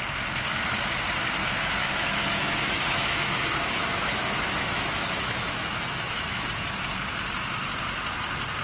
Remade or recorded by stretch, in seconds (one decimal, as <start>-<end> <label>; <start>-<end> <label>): 0.0-1.4 recorded; 1.4-6.5 remade; 6.5-8.6 recorded